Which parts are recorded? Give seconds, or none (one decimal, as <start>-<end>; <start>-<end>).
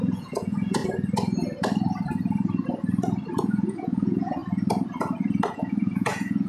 0.8-3.4; 4.4-5.5